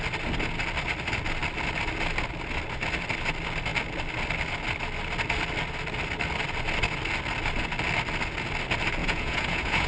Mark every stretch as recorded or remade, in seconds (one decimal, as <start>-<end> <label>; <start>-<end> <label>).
0.0-9.0 recorded; 9.0-9.9 remade